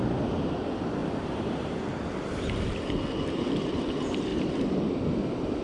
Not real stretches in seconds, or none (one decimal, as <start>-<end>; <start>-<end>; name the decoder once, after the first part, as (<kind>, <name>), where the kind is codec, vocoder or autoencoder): 1.0-3.8 (vocoder, BigVGAN v2)